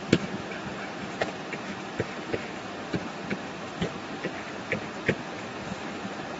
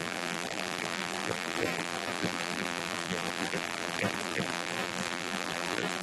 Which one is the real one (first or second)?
first